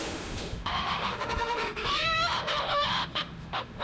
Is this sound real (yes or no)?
no